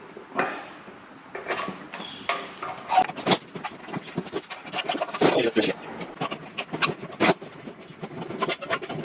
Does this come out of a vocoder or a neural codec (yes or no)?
no